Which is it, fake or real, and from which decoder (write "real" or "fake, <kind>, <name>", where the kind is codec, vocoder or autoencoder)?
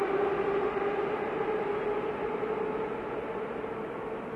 real